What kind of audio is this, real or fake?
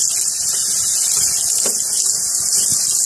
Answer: real